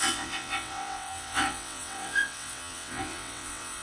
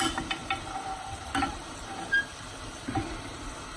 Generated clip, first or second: first